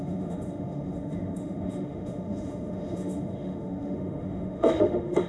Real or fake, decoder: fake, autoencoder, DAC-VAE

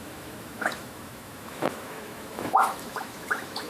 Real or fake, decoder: fake, autoencoder, DAC-VAE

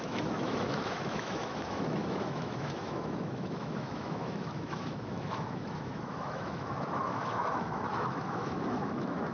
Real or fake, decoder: fake, autoencoder, DAC-VAE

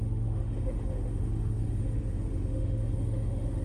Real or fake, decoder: fake, autoencoder, DAC-VAE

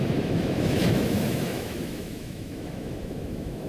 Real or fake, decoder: fake, autoencoder, DAC-VAE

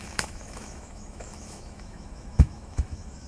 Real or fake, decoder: fake, autoencoder, DAC-VAE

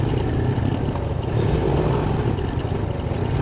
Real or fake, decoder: real